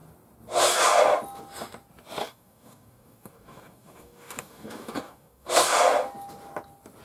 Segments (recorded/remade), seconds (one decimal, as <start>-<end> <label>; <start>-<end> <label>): 0.0-2.2 recorded; 2.2-5.5 remade; 5.5-7.0 recorded